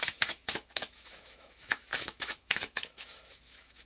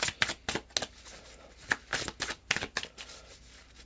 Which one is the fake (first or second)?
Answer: first